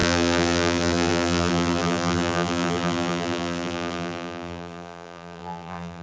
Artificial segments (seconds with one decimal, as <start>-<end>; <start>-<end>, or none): 0.0-6.0